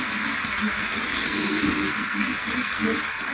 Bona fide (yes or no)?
no